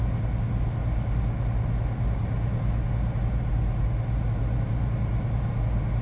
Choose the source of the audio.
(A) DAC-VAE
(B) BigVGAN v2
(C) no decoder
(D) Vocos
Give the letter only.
C